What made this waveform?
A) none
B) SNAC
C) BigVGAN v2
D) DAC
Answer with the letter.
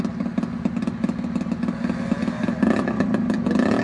A